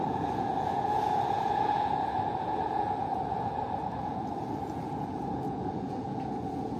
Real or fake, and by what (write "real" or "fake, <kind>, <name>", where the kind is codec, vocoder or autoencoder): fake, vocoder, Vocos